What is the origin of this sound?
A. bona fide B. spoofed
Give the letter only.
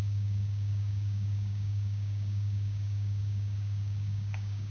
B